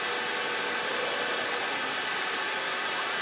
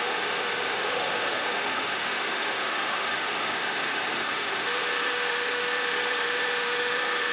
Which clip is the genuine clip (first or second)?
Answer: first